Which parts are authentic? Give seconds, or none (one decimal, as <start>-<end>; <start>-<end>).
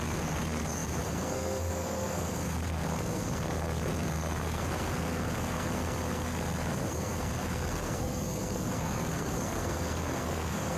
none